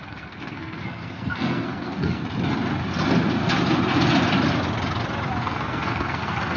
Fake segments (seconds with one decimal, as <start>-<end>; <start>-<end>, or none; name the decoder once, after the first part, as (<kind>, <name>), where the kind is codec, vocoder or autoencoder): 0.0-2.2 (codec, SNAC); 5.4-6.6